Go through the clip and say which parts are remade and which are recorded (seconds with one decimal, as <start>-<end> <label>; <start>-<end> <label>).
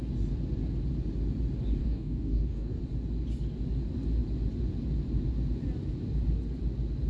0.0-1.8 recorded; 1.8-2.8 remade; 2.8-7.1 recorded